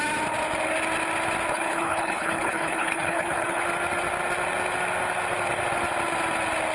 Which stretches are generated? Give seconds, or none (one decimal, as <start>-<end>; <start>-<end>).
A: 1.5-3.6